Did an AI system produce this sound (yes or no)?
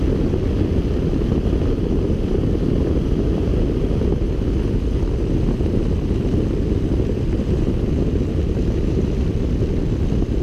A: no